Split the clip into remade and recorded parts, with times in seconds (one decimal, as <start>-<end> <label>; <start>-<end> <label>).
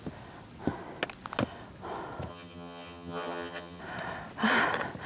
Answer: 0.0-2.3 recorded; 2.3-3.8 remade; 3.8-5.1 recorded